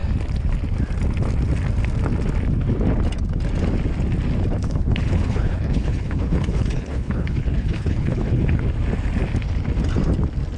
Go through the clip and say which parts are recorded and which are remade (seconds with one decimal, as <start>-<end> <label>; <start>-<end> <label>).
0.0-4.6 recorded; 4.6-8.6 remade; 8.6-10.6 recorded